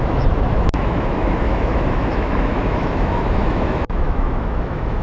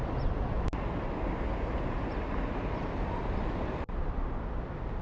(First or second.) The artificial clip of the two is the first